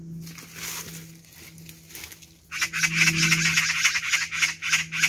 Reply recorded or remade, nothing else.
recorded